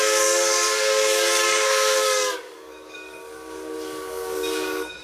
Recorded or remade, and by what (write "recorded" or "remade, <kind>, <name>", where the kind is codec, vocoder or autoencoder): remade, codec, DAC